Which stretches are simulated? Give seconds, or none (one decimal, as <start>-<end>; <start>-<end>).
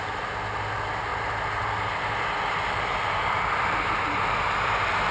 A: none